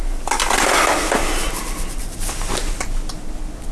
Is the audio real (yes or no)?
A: yes